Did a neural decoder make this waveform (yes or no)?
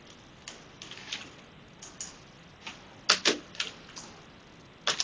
no